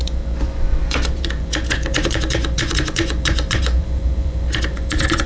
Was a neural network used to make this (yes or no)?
yes